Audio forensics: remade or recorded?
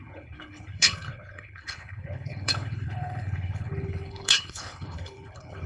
remade